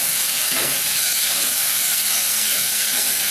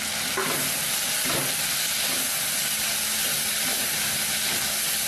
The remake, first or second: first